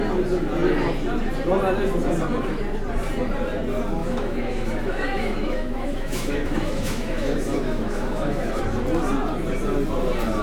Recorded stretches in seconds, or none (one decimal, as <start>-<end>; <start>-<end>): 0.0-4.0; 8.6-10.4